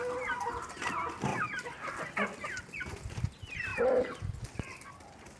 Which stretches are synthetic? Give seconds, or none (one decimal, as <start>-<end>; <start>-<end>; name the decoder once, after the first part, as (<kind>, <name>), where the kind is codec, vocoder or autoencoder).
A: 1.3-2.0 (vocoder, BigVGAN v2); 3.7-4.6